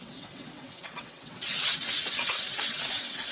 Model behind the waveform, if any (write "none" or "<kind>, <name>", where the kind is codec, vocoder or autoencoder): vocoder, WaveNeXt